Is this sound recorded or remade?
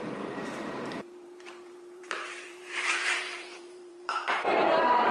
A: remade